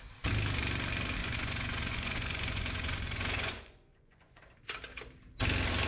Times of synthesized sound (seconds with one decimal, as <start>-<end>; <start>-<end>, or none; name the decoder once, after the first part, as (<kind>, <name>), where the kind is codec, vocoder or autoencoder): 1.2-4.4 (vocoder, Vocos)